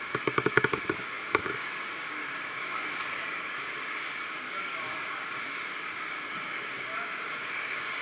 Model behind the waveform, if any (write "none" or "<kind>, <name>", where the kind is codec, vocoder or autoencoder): codec, DAC